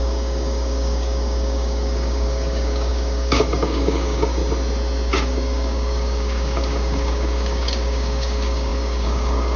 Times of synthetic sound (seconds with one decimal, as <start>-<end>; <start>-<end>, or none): 0.0-4.4; 5.1-9.6